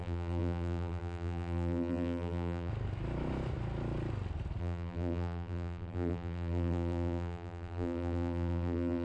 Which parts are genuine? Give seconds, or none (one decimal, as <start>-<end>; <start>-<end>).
2.7-4.6